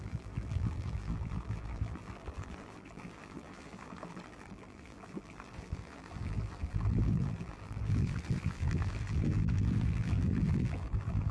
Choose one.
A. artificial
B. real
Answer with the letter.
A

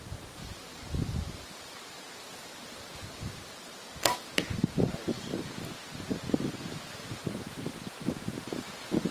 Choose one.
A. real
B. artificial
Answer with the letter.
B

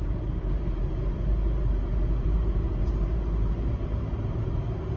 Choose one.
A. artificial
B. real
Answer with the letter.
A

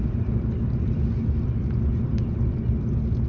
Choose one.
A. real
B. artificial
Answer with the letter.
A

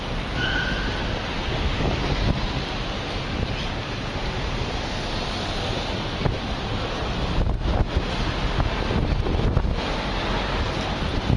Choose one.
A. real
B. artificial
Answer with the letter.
A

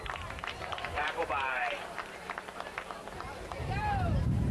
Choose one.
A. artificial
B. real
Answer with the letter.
A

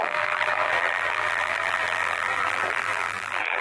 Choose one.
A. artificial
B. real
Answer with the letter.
A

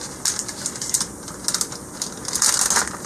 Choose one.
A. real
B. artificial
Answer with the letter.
A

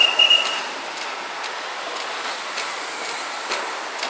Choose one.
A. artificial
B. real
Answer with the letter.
B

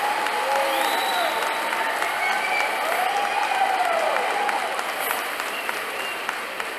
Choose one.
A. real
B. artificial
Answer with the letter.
A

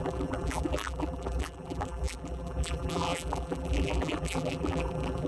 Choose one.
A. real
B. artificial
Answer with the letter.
B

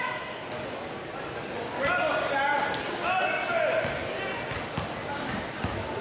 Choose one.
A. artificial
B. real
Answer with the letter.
B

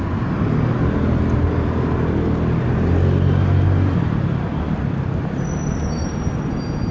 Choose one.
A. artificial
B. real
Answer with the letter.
B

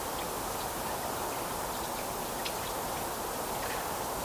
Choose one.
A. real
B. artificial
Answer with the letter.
A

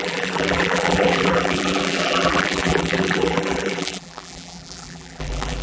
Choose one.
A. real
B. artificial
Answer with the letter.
B